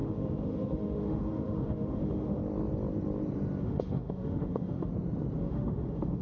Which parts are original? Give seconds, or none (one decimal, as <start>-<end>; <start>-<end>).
2.4-3.6; 4.9-5.4